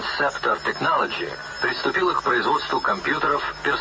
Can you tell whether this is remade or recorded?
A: recorded